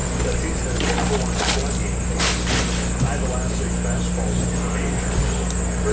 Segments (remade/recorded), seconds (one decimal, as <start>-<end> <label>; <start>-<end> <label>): 0.0-5.9 recorded